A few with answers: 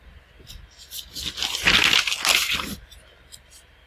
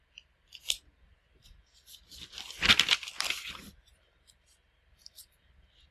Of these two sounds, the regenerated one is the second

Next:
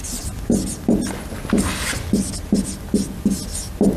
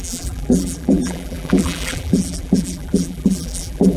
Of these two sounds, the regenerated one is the second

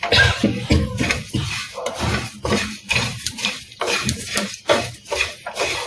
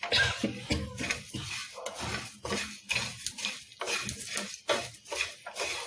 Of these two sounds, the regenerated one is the first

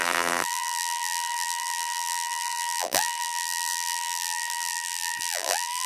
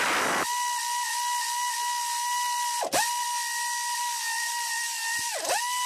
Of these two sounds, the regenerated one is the first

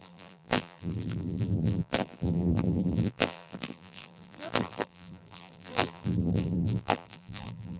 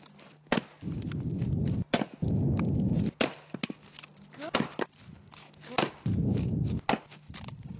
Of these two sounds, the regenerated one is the first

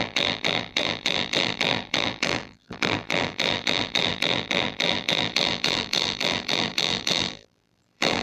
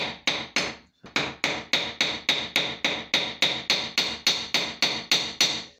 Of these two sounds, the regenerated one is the first